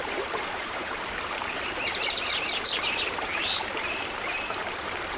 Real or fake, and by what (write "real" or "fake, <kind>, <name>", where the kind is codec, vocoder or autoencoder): fake, vocoder, BigVGAN v2